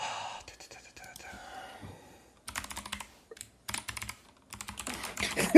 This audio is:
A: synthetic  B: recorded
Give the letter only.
B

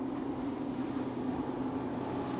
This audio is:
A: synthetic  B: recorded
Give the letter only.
B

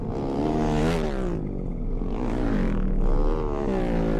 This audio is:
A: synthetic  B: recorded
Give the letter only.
B